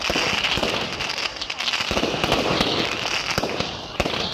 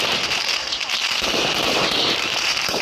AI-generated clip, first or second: second